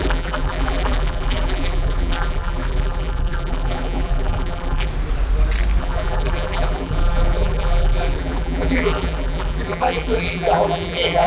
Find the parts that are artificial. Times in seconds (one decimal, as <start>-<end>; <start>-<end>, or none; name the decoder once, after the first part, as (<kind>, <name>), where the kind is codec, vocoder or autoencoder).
0.0-4.9 (vocoder, BigVGAN v2); 5.8-11.3